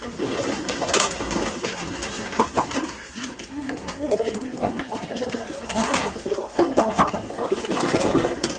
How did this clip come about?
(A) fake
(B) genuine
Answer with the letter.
A